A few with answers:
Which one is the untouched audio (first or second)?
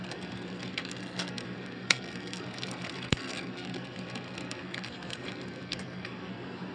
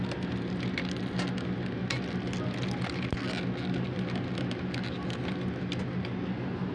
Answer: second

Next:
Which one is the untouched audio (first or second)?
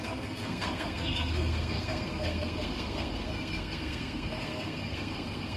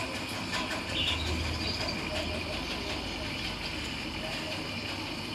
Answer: second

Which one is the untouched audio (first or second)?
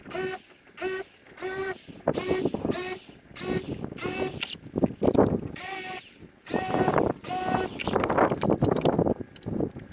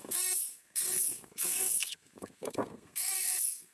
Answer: first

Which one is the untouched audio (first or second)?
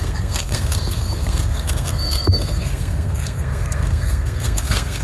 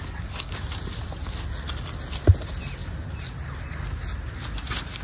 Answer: second